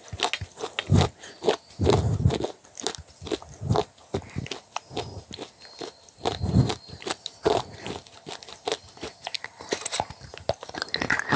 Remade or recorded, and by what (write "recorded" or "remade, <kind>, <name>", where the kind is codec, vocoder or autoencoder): recorded